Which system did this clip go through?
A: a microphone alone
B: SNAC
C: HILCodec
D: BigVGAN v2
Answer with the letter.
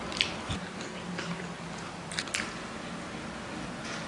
A